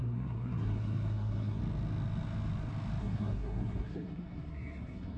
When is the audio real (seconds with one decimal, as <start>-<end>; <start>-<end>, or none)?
1.6-3.0